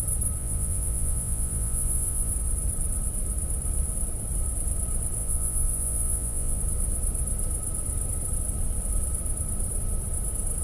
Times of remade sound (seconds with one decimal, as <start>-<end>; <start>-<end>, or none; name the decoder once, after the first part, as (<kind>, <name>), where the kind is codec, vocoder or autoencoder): 0.4-2.3 (vocoder, Vocos); 5.2-6.6